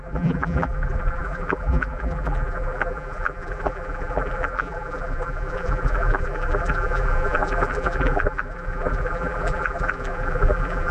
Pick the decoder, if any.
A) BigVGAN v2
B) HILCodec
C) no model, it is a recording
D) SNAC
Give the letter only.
A